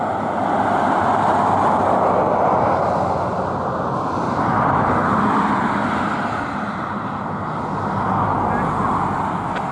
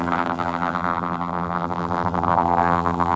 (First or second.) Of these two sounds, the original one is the first